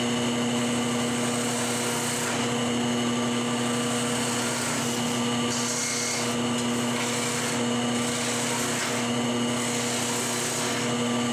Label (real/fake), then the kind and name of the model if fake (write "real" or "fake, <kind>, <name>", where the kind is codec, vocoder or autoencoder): real